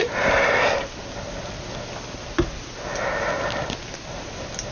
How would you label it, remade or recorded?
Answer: recorded